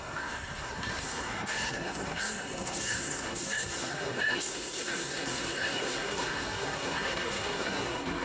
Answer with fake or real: fake